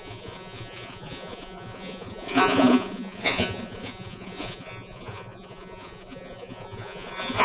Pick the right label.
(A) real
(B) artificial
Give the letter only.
B